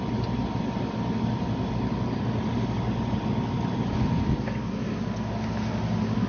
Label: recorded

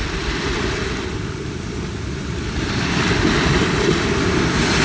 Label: recorded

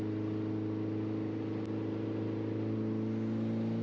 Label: recorded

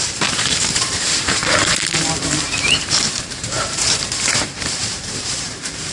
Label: remade